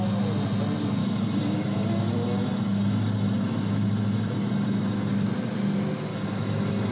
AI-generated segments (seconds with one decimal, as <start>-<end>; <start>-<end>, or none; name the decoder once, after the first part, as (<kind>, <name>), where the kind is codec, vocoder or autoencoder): 1.0-5.1 (autoencoder, DAC-VAE); 6.1-6.9